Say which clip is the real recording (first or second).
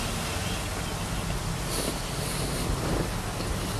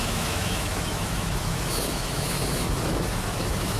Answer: first